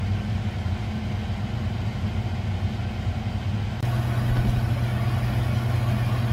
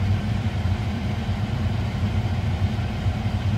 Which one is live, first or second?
first